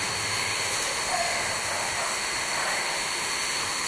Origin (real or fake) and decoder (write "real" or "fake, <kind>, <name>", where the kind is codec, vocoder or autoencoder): fake, autoencoder, DAC-VAE